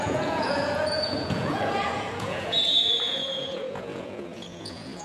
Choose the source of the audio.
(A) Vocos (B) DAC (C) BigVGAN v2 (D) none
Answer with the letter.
A